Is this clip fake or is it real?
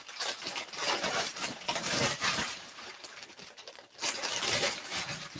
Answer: fake